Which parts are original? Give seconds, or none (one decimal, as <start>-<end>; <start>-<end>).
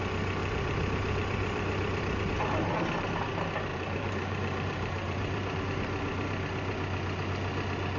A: 0.0-0.4; 2.2-3.7; 5.6-8.0